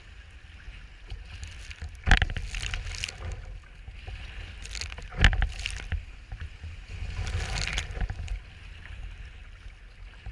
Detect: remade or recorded recorded